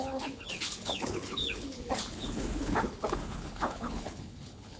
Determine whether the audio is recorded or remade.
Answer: remade